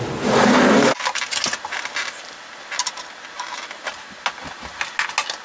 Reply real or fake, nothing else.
real